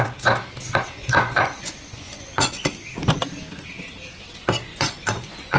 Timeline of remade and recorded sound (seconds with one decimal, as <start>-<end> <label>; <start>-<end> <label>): 0.0-1.0 recorded; 1.0-2.9 remade; 2.9-4.7 recorded; 4.7-5.6 remade